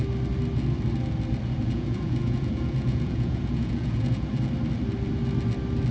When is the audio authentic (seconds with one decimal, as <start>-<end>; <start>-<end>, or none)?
0.0-1.6; 4.3-5.9